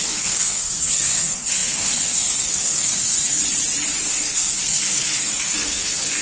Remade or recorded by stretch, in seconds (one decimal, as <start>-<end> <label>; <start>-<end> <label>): 0.0-3.4 remade; 3.4-4.1 recorded; 4.1-6.2 remade